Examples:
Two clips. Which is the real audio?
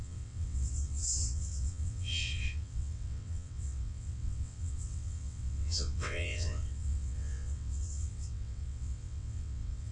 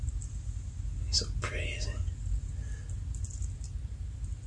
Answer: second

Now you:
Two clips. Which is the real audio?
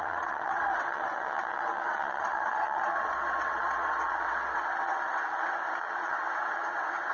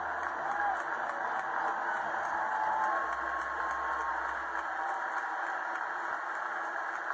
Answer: second